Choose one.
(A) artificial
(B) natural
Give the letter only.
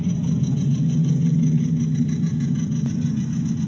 A